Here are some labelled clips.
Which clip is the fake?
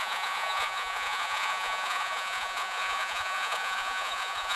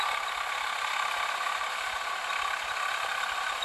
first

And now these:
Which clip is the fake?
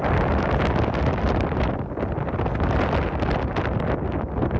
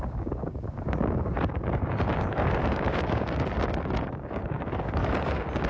second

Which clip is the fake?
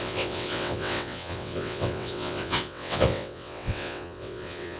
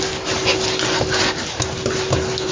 first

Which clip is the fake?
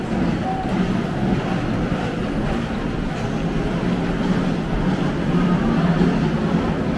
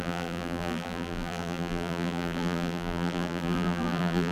second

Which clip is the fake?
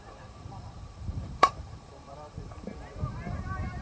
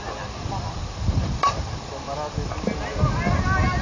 first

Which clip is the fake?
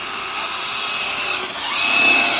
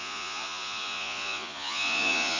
second